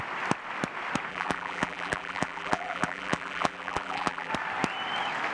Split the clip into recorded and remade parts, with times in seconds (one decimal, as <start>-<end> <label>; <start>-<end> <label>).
0.0-1.1 recorded; 1.1-4.3 remade; 4.3-5.3 recorded